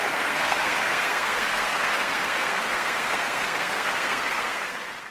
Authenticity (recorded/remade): remade